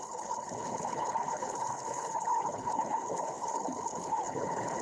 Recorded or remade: remade